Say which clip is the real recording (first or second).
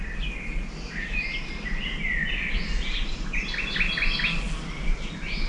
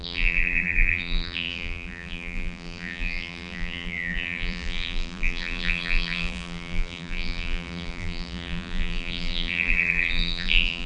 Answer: first